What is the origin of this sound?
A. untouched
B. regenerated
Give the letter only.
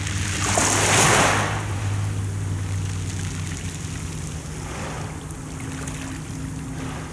A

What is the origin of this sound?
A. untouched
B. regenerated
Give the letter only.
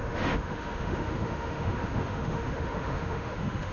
B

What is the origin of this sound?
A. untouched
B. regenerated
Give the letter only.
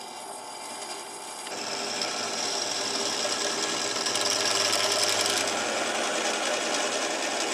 A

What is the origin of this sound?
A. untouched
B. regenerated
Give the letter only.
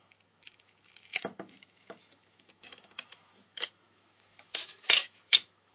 B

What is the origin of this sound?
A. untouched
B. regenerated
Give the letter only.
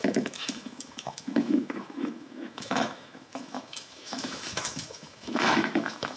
B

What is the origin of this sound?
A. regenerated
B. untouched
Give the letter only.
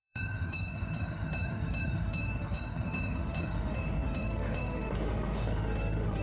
A